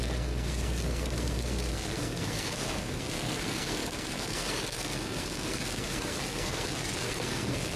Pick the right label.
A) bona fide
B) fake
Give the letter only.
B